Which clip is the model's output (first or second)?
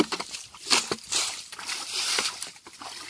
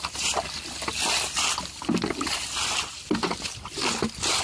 first